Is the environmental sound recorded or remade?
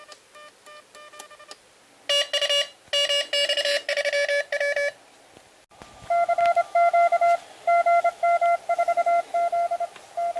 recorded